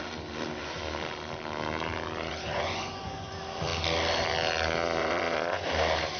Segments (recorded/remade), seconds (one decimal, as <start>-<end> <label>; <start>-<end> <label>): 0.0-2.3 recorded; 2.3-3.3 remade; 3.3-5.0 recorded; 5.0-5.7 remade; 5.7-6.2 recorded